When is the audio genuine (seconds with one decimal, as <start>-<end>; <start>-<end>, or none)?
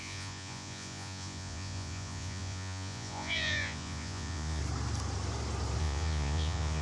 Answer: 4.6-5.8